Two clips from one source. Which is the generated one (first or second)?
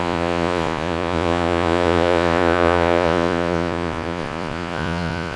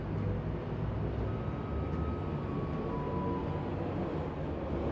first